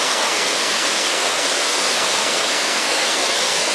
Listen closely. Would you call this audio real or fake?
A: fake